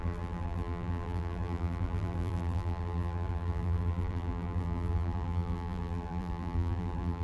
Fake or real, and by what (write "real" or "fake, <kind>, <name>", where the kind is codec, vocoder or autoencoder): fake, vocoder, BigVGAN v2